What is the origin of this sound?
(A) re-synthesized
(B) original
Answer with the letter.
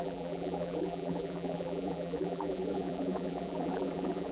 A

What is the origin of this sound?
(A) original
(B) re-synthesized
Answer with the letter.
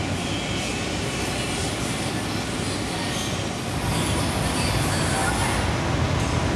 A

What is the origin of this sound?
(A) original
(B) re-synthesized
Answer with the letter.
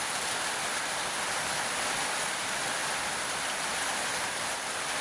A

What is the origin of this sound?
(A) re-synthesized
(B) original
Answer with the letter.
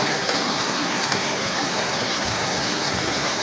A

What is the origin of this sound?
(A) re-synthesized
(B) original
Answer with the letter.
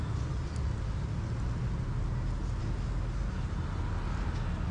B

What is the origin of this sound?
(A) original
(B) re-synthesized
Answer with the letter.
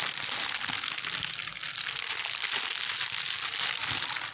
A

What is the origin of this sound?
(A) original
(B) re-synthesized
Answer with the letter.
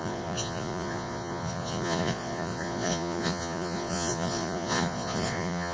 B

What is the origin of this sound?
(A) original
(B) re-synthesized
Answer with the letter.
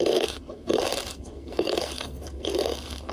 B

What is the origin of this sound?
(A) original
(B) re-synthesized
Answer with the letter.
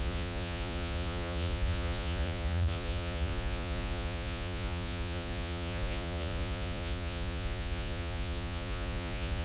B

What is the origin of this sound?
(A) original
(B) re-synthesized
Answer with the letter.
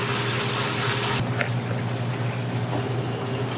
A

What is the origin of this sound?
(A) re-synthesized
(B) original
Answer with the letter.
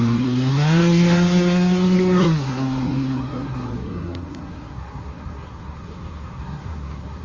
A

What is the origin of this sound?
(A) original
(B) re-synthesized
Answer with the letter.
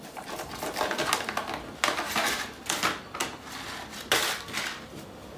A